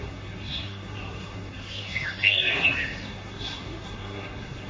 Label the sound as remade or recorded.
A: remade